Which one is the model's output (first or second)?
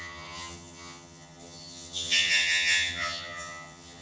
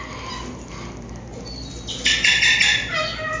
first